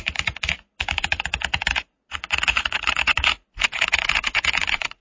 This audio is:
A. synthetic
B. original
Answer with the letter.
A